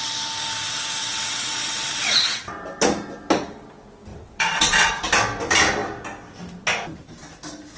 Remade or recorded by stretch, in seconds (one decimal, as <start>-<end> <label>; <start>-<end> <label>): 0.0-1.0 recorded; 1.0-2.5 remade; 2.5-4.1 recorded; 4.1-4.9 remade; 4.9-7.8 recorded